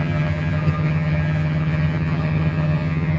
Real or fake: fake